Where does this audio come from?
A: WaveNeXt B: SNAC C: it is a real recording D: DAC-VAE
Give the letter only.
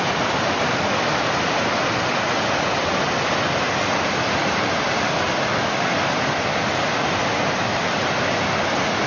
C